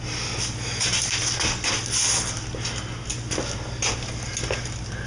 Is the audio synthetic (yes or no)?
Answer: no